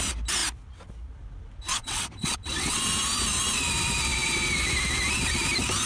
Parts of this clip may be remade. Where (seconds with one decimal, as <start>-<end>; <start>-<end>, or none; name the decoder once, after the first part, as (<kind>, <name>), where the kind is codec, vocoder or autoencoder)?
1.7-2.8 (vocoder, WaveNeXt)